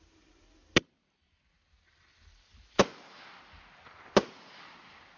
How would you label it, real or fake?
real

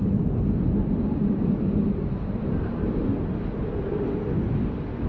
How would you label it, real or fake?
real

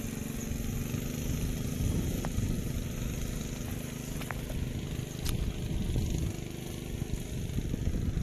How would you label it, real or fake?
real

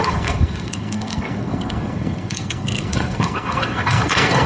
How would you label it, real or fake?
fake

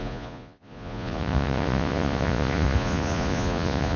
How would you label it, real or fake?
fake